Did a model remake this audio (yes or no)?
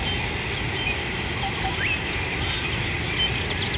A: no